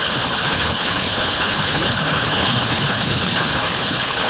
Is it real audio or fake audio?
fake